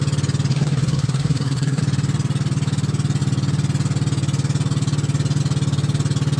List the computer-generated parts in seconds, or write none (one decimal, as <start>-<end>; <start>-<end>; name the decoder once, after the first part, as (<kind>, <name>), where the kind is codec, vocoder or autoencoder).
0.5-1.8 (codec, SNAC)